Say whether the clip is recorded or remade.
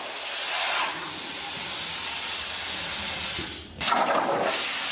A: recorded